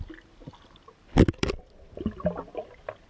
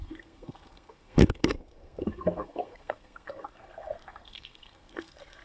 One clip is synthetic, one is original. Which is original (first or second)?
first